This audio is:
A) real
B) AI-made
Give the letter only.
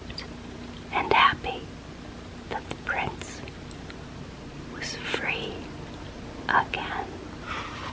A